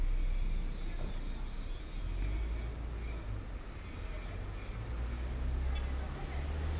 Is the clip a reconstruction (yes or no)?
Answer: no